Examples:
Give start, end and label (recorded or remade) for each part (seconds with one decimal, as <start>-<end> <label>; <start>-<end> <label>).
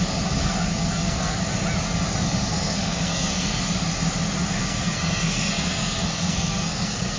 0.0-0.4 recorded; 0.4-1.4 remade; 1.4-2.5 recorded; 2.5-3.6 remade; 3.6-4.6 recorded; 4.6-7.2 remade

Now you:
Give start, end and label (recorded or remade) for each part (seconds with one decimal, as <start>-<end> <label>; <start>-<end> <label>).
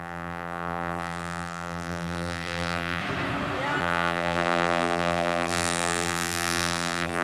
0.0-3.0 remade; 3.0-3.8 recorded; 3.8-7.2 remade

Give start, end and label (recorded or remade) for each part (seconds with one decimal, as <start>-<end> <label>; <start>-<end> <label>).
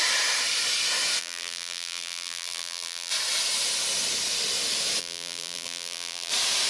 0.0-1.2 recorded; 1.2-3.1 remade; 3.1-5.0 recorded; 5.0-6.3 remade; 6.3-6.7 recorded